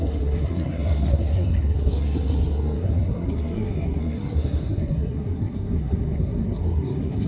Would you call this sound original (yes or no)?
no